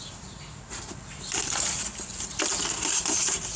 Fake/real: real